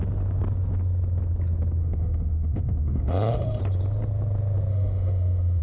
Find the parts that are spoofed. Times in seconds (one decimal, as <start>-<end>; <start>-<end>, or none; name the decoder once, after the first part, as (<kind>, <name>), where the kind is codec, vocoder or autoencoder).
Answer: 1.8-3.6 (autoencoder, DAC-VAE); 4.7-5.6